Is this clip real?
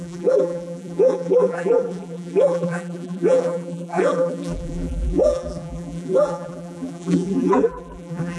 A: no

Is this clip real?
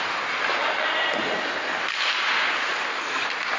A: yes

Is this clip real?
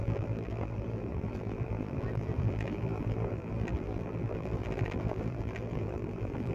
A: no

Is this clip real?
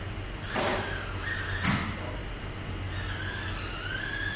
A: yes